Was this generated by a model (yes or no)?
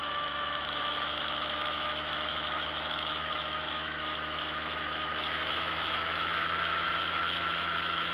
yes